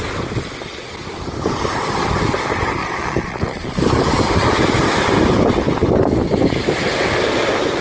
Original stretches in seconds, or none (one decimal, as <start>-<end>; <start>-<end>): 0.0-2.8; 3.8-7.8